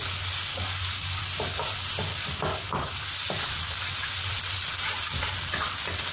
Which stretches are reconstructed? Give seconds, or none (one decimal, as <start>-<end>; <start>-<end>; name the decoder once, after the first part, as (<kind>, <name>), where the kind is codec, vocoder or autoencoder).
0.5-1.2 (codec, DAC); 2.1-2.9